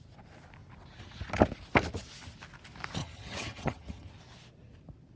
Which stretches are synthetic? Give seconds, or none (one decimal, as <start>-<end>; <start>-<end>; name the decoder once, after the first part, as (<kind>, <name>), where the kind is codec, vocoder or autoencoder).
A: 3.0-4.1 (vocoder, HiFi-GAN)